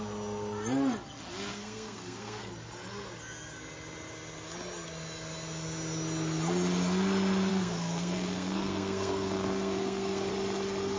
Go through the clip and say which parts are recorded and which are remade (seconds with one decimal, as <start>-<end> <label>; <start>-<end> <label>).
0.0-1.5 recorded; 1.5-2.5 remade; 2.5-7.5 recorded; 7.5-10.3 remade; 10.3-11.0 recorded